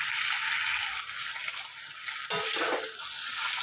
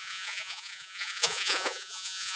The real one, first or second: first